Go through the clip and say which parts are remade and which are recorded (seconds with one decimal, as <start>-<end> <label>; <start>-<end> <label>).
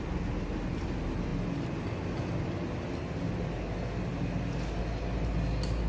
0.0-5.9 recorded